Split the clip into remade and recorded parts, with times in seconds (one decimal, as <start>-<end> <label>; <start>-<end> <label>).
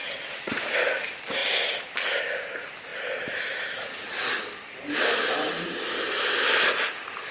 0.0-0.6 remade; 0.6-7.3 recorded